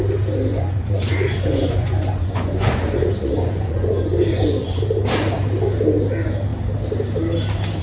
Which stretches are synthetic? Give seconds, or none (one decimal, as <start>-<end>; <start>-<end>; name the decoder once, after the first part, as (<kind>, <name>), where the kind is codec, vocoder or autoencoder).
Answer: 0.5-4.8 (vocoder, Vocos)